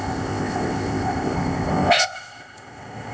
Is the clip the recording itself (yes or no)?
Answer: no